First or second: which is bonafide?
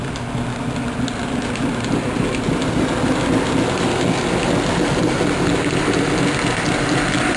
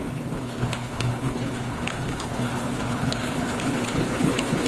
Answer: first